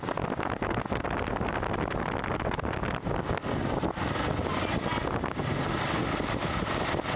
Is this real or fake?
real